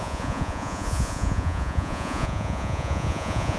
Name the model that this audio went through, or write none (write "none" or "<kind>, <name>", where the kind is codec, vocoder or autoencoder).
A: vocoder, Vocos